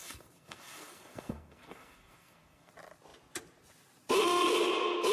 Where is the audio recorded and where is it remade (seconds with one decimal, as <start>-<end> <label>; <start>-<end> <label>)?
0.0-2.7 remade; 2.7-5.1 recorded